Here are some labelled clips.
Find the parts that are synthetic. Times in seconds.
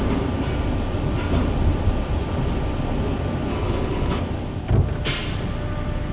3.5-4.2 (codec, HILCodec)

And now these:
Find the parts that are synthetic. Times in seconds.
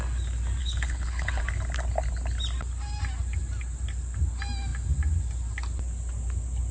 0.6-1.4 (codec, HILCodec)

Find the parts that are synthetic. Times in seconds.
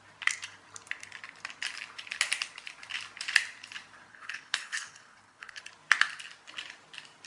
4.1-5.6 (codec, HILCodec)